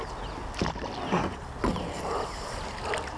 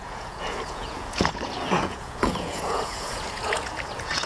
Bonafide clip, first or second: first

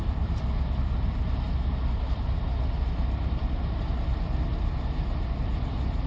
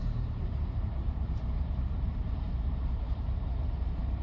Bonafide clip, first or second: first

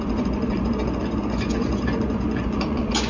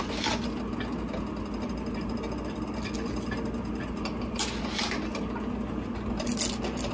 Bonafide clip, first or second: second